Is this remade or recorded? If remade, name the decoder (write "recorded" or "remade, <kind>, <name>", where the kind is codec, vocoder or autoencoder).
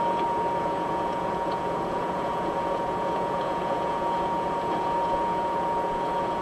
remade, vocoder, Vocos